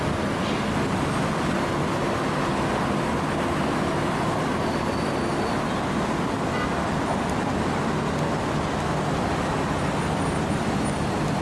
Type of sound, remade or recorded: recorded